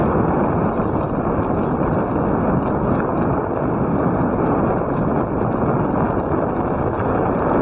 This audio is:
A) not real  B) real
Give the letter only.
B